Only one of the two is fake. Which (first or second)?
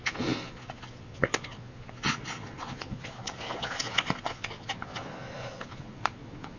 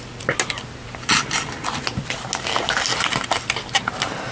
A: first